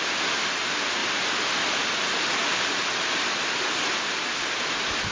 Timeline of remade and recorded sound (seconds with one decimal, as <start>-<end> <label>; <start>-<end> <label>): 0.0-5.1 recorded